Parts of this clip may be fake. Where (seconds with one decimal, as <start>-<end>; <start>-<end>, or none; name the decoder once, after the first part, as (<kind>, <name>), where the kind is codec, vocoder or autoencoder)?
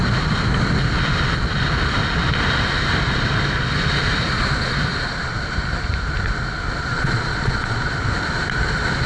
6.9-7.9 (vocoder, Vocos)